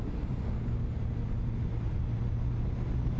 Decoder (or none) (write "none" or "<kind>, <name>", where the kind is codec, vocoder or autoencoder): none